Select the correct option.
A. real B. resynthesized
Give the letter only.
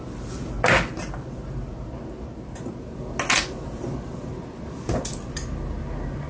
A